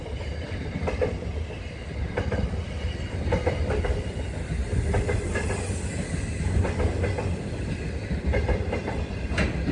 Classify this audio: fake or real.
real